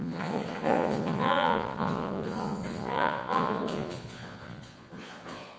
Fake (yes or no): yes